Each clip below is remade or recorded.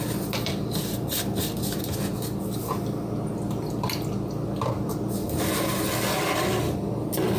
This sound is recorded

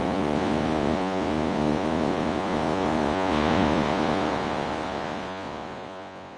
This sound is remade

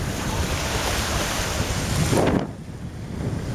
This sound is recorded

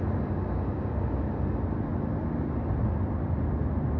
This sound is recorded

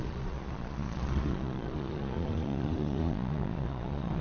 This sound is remade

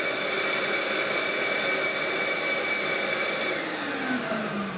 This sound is recorded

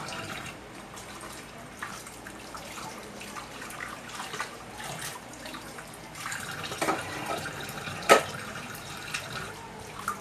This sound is remade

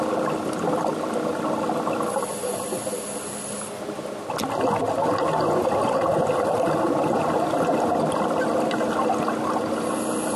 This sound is recorded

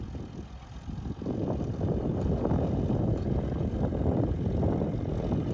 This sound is recorded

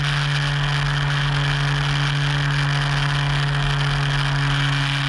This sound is recorded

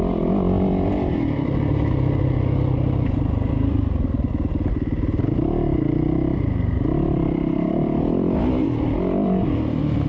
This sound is recorded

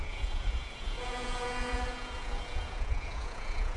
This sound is remade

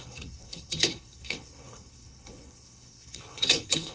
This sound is remade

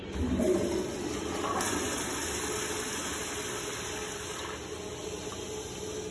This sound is recorded